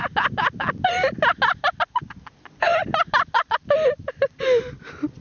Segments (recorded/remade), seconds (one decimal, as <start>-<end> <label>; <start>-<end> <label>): 0.0-5.2 recorded